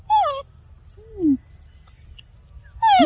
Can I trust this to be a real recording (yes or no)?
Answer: yes